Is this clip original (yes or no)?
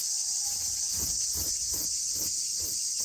yes